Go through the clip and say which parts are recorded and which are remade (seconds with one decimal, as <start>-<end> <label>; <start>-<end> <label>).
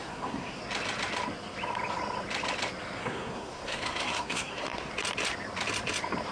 0.0-0.6 remade; 0.6-3.0 recorded; 3.0-4.9 remade; 4.9-6.3 recorded